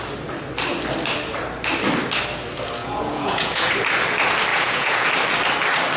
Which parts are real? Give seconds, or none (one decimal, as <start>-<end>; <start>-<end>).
0.0-2.8; 3.7-4.5; 5.1-6.0